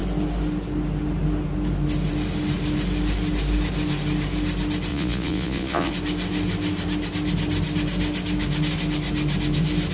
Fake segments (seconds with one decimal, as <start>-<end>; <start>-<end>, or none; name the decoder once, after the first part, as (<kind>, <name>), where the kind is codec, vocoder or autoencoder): 4.9-5.9 (vocoder, Vocos)